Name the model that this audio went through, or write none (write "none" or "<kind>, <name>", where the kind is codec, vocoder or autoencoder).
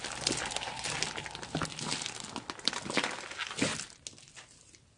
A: none